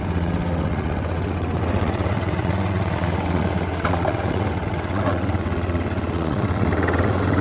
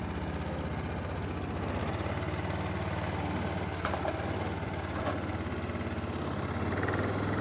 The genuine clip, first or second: second